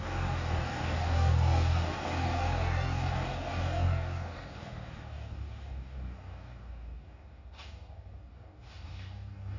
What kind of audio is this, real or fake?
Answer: fake